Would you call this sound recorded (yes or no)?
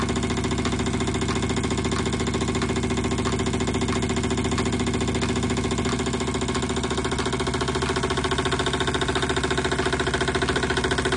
yes